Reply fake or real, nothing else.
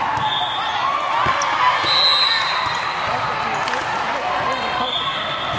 real